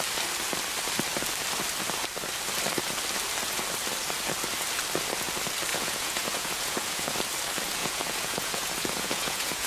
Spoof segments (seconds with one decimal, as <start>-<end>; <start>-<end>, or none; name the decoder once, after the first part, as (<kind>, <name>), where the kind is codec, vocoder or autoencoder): 5.7-7.1 (vocoder, Vocos); 7.8-9.7